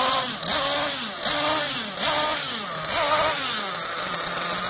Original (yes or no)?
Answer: yes